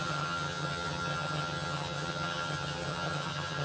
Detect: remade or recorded remade